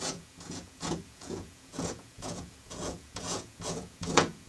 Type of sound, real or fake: fake